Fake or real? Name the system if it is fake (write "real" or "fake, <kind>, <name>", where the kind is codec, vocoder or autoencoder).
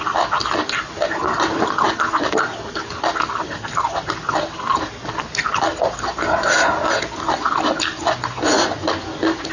real